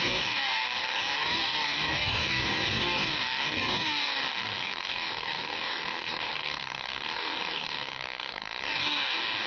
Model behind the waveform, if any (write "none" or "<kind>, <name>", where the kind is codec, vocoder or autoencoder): codec, DAC